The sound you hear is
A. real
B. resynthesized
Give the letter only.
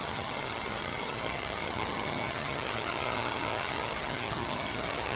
B